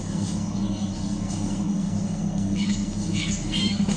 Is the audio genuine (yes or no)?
no